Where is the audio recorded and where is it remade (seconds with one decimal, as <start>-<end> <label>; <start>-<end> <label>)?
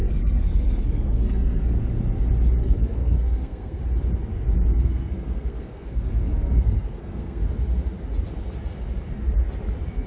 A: 0.0-1.8 remade; 1.8-2.6 recorded; 2.6-3.8 remade; 3.8-4.7 recorded; 4.7-7.4 remade; 7.4-10.1 recorded